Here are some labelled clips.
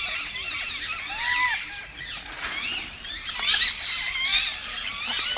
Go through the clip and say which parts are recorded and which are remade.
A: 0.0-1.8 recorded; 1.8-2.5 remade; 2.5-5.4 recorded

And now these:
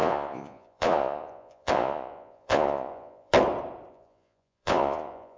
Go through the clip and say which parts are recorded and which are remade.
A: 0.0-3.3 remade; 3.3-3.9 recorded; 3.9-5.4 remade